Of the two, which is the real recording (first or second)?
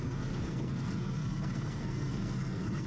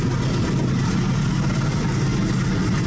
second